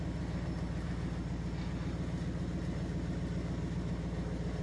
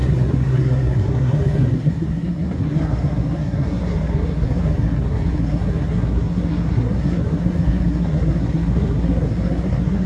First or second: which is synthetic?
second